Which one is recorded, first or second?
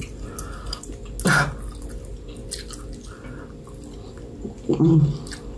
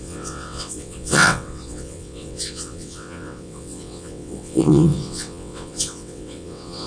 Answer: first